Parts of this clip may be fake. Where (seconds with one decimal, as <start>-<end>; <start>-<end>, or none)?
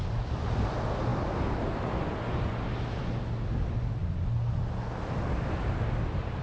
none